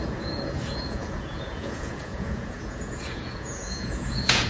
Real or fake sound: fake